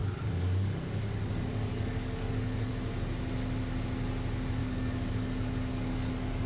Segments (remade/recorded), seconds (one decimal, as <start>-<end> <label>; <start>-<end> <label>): 0.0-2.7 remade; 2.7-4.6 recorded; 4.6-5.1 remade; 5.1-5.7 recorded; 5.7-6.5 remade